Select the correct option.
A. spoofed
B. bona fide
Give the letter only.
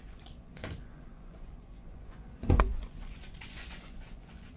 A